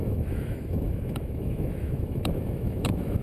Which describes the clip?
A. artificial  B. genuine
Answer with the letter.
A